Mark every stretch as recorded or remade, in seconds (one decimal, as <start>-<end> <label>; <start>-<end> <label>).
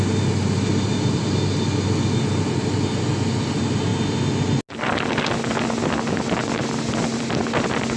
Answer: 0.0-8.0 recorded